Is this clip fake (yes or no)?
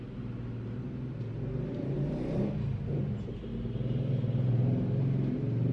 no